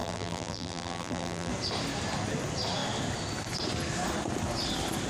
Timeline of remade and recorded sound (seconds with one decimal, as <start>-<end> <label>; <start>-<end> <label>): 0.0-1.5 remade; 1.5-5.1 recorded